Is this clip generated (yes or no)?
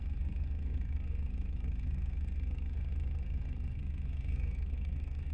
yes